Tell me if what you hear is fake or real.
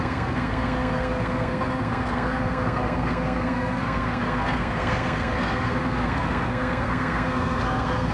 fake